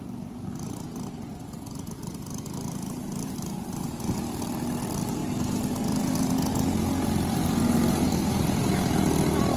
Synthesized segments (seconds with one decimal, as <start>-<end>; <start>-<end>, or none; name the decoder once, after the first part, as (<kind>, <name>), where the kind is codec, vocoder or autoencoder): none